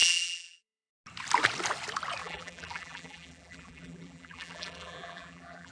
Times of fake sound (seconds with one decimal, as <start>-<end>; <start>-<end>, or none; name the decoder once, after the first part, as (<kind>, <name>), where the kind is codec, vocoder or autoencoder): 0.0-0.9 (vocoder, BigVGAN v2); 2.2-5.7

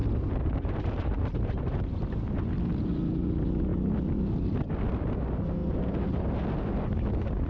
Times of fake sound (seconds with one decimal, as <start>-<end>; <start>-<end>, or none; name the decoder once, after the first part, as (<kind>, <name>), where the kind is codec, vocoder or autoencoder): 0.0-1.8 (vocoder, BigVGAN v2)